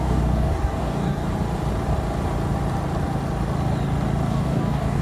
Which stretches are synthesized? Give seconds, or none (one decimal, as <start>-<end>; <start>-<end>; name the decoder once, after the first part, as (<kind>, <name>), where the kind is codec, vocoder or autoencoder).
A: 0.0-1.3 (codec, DAC); 4.3-5.0